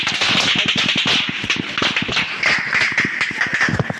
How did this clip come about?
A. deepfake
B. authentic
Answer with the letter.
B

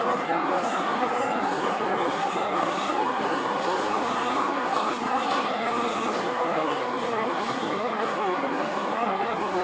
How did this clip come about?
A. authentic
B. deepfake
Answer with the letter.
B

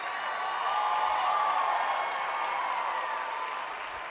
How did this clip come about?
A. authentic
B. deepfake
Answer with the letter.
A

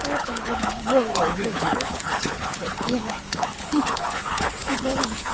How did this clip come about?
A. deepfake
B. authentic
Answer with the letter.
A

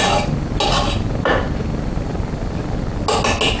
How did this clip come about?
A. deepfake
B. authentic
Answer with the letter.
B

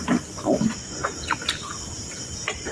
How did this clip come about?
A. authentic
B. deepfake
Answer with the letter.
A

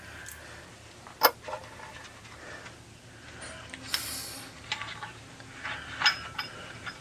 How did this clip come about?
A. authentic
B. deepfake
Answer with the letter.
A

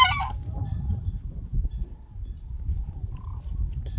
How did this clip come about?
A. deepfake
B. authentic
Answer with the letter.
B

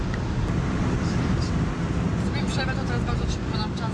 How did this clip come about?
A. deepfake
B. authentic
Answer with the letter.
B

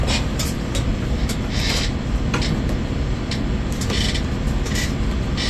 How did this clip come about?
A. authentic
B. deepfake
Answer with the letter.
A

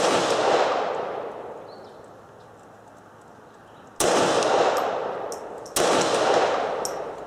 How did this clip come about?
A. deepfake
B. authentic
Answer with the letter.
B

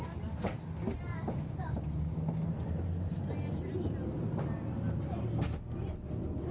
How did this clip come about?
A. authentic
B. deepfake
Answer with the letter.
A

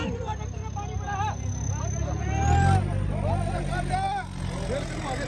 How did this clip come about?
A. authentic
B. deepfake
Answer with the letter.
A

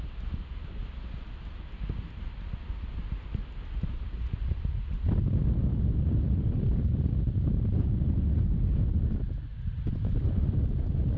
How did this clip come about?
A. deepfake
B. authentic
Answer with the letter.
B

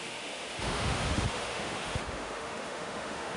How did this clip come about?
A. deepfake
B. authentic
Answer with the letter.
A